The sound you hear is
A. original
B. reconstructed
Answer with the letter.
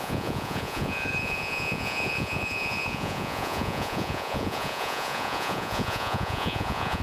B